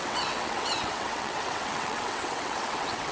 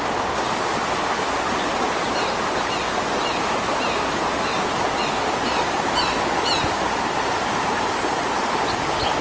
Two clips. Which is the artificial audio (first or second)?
first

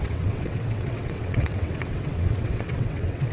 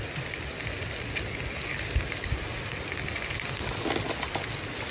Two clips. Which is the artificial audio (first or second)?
first